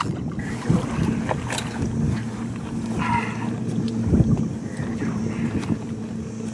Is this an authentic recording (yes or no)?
yes